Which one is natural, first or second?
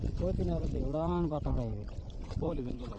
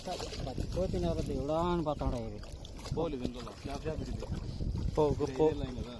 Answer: second